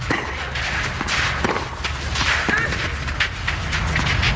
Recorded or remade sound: recorded